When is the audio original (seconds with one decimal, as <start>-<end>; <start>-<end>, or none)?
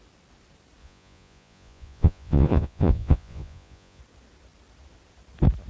0.0-0.8; 4.0-5.7